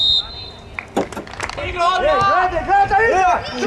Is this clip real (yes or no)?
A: yes